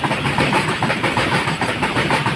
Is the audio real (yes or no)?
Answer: no